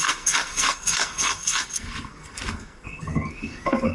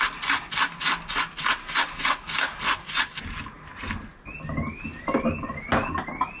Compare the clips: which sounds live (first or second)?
second